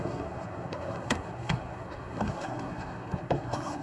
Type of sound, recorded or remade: remade